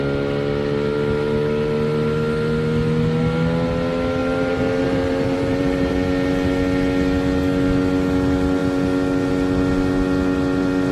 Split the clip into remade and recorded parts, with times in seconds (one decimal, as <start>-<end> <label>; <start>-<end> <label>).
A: 0.0-4.2 recorded; 4.2-5.9 remade; 5.9-10.9 recorded